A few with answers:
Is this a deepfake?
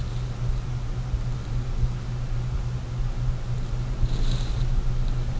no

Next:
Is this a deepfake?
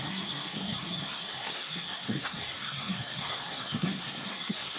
yes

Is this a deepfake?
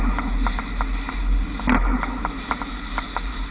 no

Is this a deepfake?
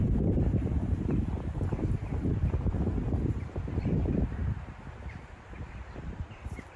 yes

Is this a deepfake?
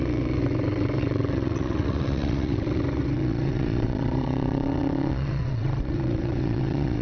yes